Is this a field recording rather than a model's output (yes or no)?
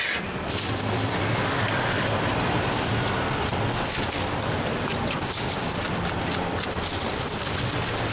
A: no